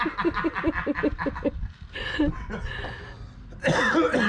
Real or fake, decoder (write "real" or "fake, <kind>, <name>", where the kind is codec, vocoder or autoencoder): real